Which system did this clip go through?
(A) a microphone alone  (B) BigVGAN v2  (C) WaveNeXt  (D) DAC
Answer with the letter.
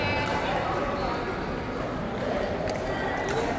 A